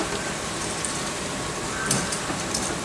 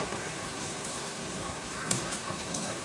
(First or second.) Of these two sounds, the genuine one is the first